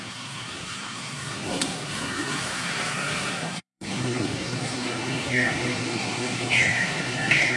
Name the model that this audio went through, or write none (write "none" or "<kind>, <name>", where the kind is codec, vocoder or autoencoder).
codec, SNAC